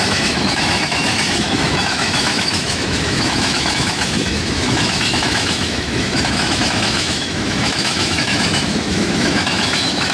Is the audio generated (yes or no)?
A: yes